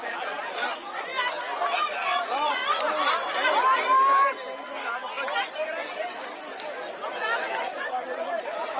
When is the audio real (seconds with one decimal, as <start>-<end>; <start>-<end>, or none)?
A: 1.1-1.8; 2.6-7.6